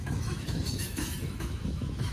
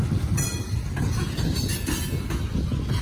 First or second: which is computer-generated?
first